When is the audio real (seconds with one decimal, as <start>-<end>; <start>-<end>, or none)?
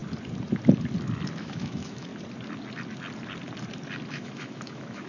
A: 0.0-1.4; 2.1-4.1